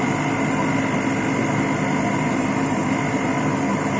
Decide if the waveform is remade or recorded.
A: recorded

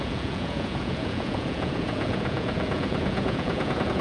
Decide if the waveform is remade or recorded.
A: remade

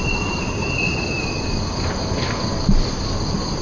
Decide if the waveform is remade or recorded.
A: recorded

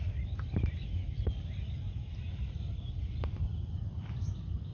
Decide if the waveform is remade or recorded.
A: recorded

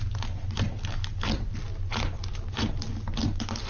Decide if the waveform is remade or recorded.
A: recorded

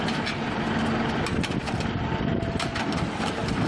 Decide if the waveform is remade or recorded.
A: recorded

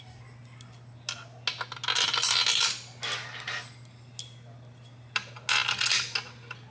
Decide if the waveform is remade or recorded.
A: recorded